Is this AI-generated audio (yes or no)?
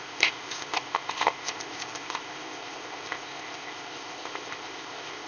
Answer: yes